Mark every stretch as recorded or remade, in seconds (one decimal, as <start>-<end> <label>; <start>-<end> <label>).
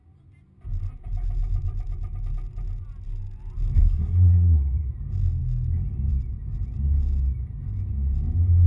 0.0-3.8 recorded; 3.8-4.9 remade; 4.9-8.7 recorded